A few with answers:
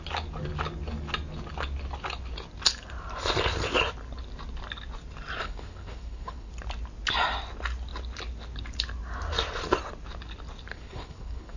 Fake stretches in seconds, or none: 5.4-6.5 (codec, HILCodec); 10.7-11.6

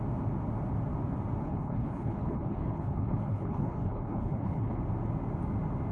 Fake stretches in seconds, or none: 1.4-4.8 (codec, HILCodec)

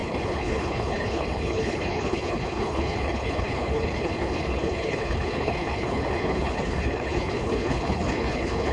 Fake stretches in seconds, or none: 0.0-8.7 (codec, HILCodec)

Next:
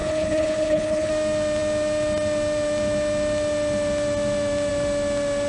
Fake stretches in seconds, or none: 0.0-1.1 (codec, HILCodec)